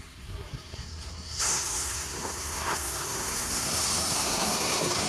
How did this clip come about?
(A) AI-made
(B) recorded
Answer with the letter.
A